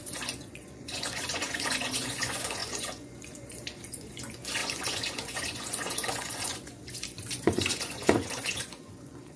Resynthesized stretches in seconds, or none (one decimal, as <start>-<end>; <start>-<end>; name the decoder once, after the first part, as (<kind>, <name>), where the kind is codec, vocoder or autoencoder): 0.0-9.4 (vocoder, Vocos)